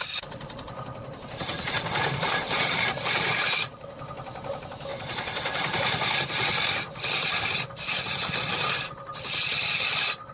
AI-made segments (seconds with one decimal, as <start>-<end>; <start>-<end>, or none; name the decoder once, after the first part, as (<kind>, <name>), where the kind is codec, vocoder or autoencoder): none